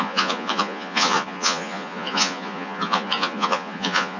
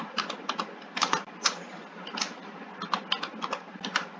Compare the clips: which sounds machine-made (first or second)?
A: first